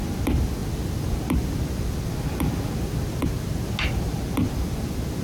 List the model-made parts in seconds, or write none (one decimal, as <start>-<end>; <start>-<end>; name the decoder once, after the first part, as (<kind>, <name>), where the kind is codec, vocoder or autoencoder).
none